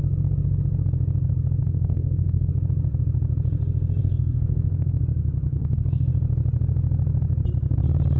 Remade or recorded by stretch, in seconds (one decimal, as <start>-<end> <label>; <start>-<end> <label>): 0.0-1.6 recorded; 1.6-2.5 remade; 2.5-4.0 recorded; 4.0-5.0 remade; 5.0-5.5 recorded; 5.5-6.1 remade; 6.1-8.2 recorded